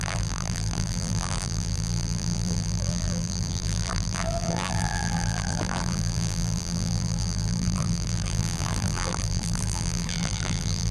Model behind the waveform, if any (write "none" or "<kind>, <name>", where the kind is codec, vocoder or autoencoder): vocoder, BigVGAN v2